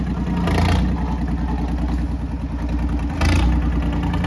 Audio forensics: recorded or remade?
recorded